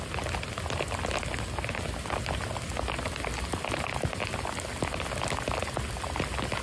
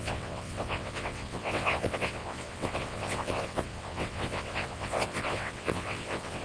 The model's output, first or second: second